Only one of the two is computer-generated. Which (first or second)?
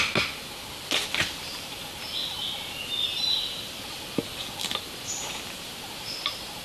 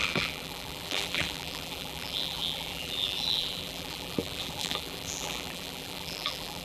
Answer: second